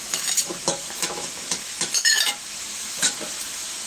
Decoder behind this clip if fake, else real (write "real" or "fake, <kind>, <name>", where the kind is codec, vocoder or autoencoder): fake, autoencoder, DAC-VAE